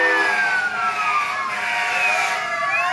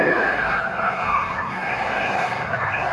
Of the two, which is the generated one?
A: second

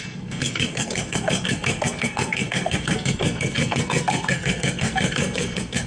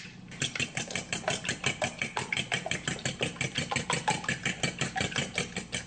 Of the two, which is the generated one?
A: first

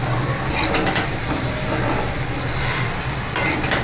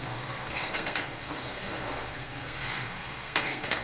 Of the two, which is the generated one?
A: second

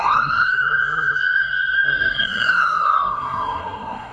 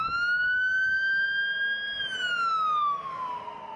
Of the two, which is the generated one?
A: first